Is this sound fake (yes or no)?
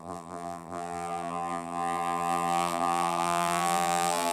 yes